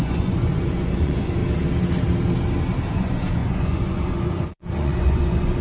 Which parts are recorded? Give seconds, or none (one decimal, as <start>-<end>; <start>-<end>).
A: 1.4-2.9